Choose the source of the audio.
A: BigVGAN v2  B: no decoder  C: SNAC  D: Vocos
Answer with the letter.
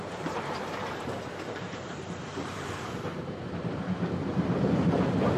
A